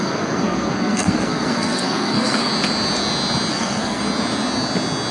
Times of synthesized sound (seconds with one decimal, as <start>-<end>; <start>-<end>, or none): 0.0-2.5; 3.5-4.0